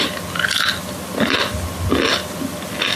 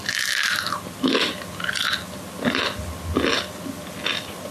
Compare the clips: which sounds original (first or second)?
second